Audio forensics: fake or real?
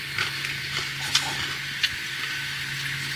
real